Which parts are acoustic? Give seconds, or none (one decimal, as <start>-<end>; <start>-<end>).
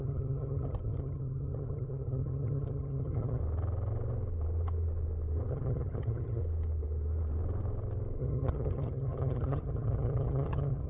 3.4-5.5; 6.4-8.2